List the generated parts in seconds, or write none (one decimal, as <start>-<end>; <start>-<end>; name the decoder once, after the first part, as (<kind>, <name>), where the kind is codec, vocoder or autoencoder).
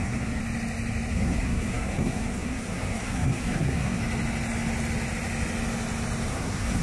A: 0.0-0.4 (codec, SNAC); 1.1-4.0; 6.3-6.8